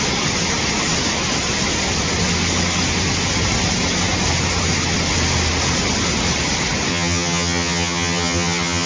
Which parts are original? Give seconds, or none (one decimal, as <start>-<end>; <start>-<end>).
0.0-6.9